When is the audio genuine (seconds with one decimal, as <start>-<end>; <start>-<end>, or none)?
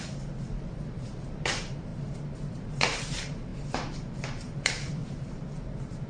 1.9-2.5; 5.0-6.1